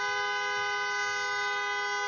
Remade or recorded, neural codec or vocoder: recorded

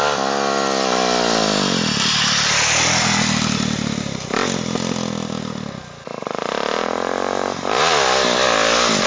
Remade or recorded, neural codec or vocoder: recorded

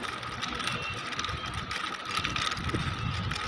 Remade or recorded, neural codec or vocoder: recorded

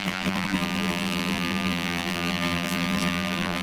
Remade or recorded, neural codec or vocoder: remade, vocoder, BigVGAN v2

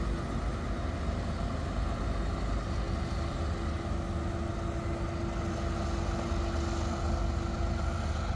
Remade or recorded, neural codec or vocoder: recorded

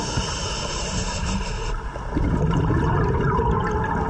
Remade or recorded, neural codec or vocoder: recorded